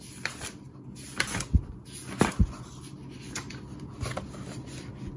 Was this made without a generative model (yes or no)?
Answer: yes